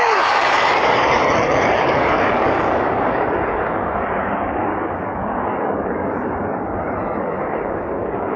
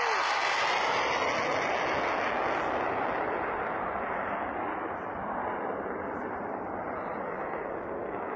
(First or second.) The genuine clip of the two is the second